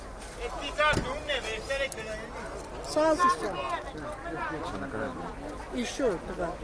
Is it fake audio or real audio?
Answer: real